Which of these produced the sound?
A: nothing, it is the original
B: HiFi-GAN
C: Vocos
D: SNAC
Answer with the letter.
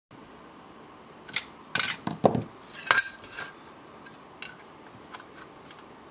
A